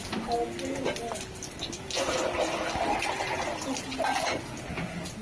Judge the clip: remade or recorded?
recorded